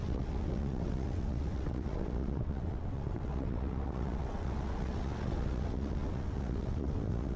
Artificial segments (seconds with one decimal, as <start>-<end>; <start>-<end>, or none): 0.0-7.4